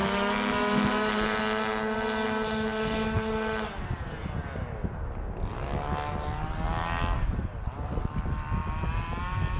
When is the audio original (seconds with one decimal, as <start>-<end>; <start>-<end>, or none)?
1.4-9.6